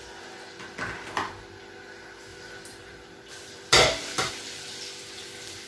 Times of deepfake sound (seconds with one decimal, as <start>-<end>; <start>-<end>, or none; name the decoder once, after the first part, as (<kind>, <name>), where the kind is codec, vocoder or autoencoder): 2.3-4.3 (vocoder, BigVGAN v2)